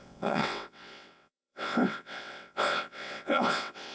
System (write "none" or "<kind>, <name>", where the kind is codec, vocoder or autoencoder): vocoder, WaveNeXt